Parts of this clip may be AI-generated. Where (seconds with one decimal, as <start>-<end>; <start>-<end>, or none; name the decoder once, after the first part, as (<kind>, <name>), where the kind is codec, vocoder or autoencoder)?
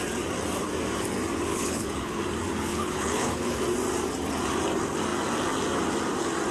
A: 1.5-2.2 (codec, HILCodec); 2.7-3.6